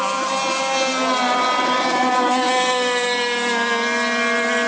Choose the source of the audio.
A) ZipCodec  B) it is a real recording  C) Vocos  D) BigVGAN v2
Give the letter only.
B